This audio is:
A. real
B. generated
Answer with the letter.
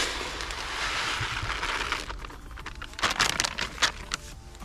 A